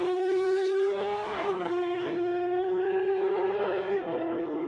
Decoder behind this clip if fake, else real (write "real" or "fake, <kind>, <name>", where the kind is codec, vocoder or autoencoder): fake, codec, SNAC